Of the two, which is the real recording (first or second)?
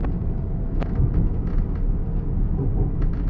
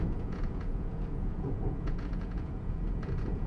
first